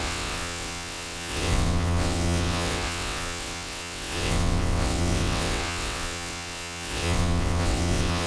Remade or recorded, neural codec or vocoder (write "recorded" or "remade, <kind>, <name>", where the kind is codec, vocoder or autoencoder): remade, vocoder, WaveNeXt